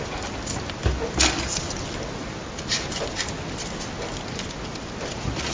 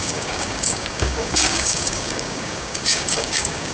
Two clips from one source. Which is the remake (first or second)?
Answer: second